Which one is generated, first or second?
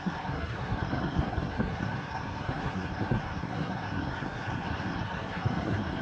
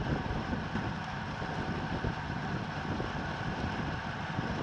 first